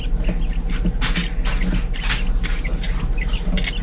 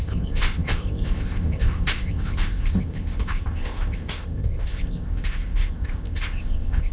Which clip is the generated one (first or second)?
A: second